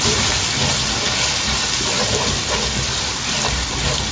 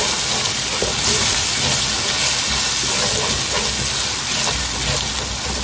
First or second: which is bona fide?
second